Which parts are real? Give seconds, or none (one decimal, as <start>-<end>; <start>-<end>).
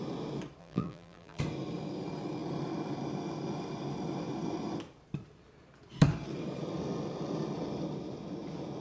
0.0-0.6; 1.4-8.8